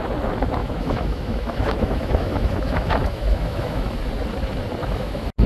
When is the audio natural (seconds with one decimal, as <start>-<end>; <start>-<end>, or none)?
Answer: 0.0-0.6; 3.9-4.8